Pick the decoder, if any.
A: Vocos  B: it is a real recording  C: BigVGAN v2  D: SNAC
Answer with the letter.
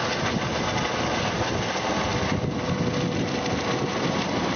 B